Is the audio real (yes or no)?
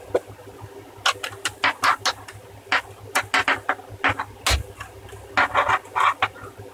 yes